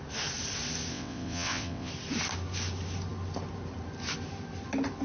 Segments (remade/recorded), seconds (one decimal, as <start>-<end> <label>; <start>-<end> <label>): 0.0-0.9 recorded; 0.9-1.9 remade; 1.9-5.0 recorded